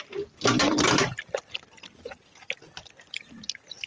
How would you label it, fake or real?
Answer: real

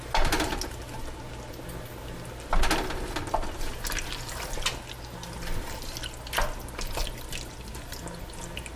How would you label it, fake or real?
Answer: real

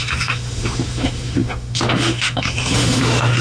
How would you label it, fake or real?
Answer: fake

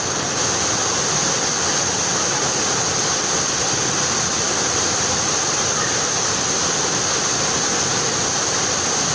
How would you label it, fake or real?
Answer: real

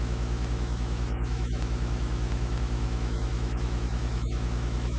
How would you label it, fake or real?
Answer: fake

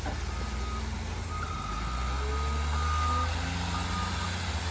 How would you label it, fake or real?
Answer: real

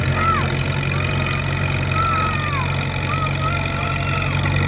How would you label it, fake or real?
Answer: real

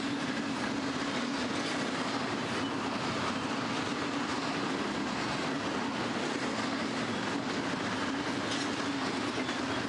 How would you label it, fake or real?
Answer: real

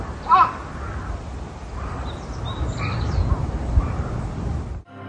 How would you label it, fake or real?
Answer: real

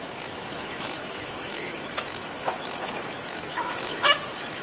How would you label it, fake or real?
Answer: fake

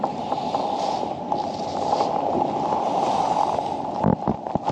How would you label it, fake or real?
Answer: real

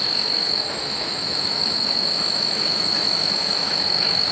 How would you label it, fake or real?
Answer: fake